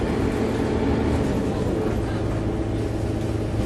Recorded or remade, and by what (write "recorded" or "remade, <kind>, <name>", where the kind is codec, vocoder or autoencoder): recorded